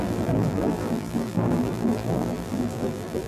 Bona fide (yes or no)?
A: no